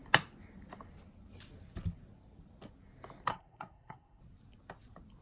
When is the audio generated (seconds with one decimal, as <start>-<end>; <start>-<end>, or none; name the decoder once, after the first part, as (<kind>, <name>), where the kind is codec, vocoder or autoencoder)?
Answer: 3.3-4.2 (codec, SNAC)

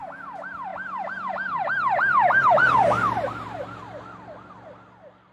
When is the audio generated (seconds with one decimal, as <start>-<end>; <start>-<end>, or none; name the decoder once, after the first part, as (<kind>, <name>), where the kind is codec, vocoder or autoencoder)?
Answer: none

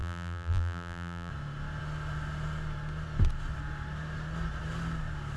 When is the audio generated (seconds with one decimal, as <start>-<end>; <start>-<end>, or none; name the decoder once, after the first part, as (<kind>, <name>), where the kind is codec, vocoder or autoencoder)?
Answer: 0.0-1.3 (vocoder, BigVGAN v2)

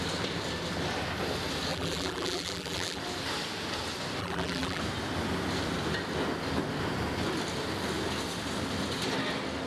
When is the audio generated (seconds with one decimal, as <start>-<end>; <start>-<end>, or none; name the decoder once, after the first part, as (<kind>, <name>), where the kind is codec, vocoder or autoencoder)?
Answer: 1.7-3.0 (vocoder, BigVGAN v2); 4.2-4.8